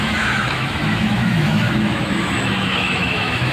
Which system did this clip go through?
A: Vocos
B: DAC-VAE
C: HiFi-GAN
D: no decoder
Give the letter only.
B